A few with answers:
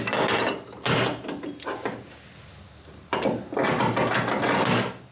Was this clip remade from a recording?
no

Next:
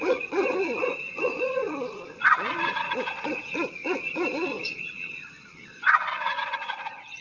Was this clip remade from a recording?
yes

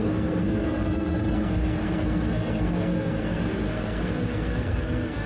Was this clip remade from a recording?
yes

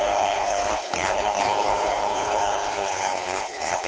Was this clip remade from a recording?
yes